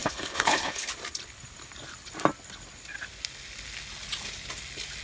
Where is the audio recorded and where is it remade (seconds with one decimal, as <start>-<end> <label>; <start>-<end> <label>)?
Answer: 0.0-0.9 remade; 0.9-5.0 recorded